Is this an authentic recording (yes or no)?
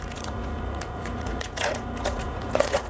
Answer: no